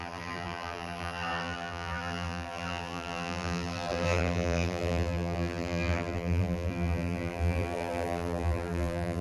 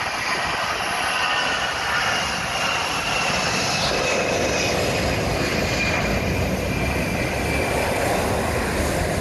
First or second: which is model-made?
first